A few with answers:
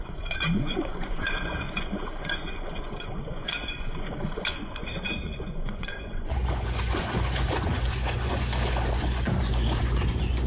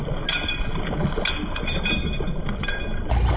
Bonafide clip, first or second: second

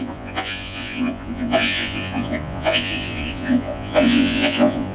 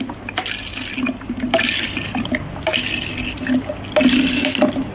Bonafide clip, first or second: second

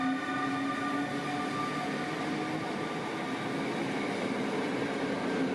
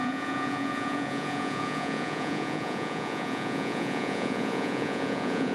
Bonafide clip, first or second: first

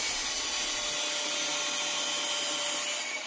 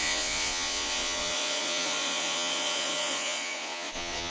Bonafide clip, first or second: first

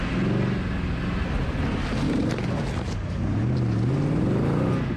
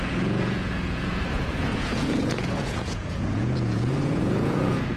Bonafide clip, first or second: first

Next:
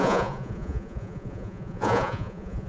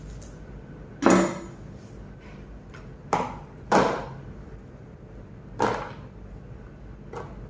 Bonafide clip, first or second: second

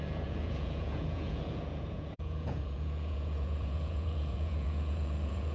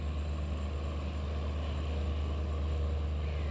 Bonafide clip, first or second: second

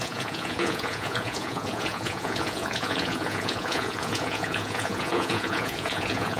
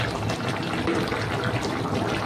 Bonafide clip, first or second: second